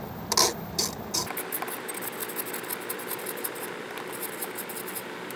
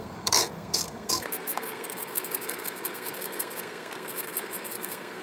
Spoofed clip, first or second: second